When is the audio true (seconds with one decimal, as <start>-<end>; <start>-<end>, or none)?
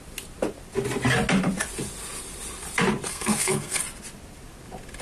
0.0-3.1; 3.8-5.0